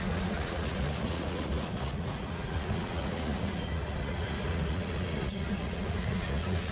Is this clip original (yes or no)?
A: no